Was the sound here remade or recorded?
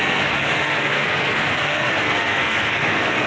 remade